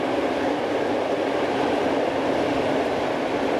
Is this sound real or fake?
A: real